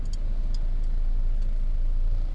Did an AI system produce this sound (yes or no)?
no